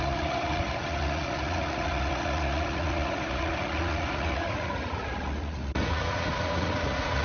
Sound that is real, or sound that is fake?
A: fake